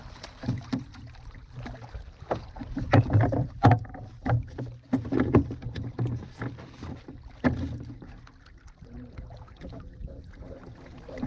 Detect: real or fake real